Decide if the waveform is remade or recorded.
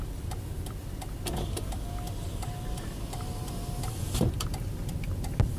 recorded